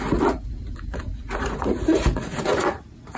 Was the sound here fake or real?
fake